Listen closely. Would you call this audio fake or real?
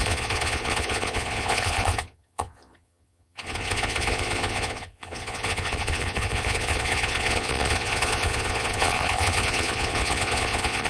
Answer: fake